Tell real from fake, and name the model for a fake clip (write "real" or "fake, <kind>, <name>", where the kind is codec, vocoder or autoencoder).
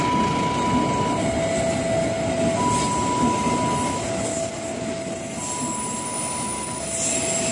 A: real